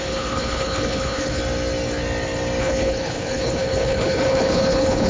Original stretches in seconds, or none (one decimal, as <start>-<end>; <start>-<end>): 1.4-2.6